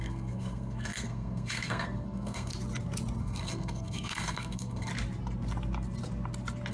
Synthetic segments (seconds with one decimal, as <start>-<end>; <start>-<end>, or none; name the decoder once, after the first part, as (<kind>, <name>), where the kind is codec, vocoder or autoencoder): 0.0-2.5 (codec, SNAC); 3.2-4.9